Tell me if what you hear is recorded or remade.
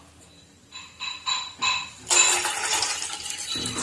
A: recorded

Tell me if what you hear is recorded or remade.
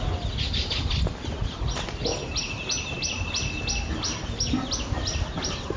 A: recorded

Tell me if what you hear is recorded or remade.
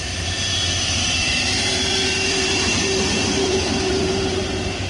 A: remade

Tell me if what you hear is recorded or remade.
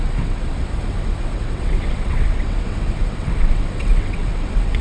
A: remade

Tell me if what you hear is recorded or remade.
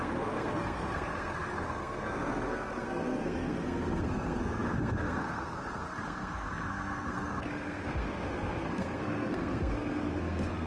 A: remade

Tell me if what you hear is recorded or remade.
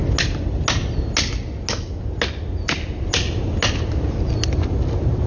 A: recorded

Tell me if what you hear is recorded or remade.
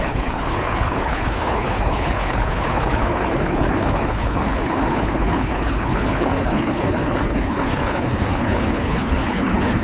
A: remade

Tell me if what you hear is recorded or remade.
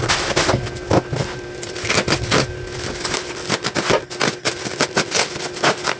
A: recorded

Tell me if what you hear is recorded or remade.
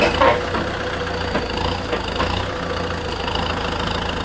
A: recorded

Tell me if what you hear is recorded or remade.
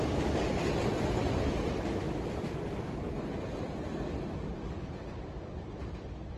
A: recorded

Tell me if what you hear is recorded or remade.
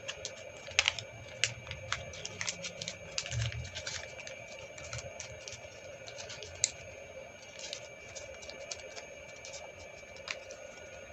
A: recorded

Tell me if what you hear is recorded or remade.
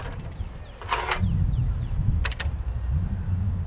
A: recorded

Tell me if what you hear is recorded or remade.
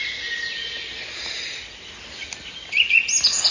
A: recorded